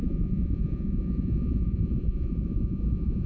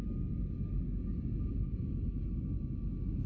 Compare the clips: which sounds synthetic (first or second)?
first